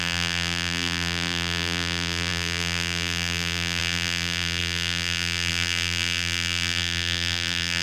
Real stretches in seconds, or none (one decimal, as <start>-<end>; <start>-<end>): none